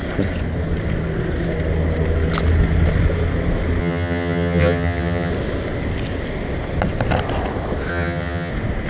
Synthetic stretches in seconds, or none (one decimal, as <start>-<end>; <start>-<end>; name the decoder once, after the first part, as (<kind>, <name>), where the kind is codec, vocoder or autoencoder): 3.8-5.3 (vocoder, HiFi-GAN); 7.9-8.5